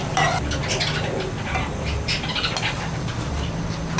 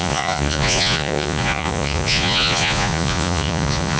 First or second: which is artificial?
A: second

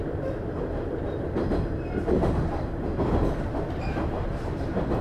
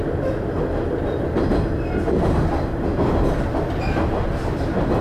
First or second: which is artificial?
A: first